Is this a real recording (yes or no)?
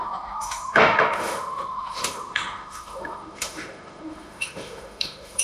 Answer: no